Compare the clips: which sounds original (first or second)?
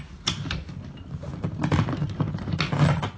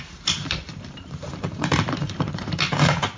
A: first